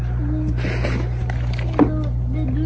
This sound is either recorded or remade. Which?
recorded